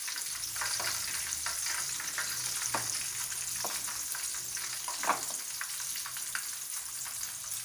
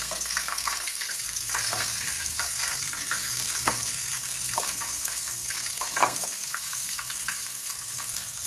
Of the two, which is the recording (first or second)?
first